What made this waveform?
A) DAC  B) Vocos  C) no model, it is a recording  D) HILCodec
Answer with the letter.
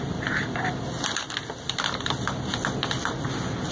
C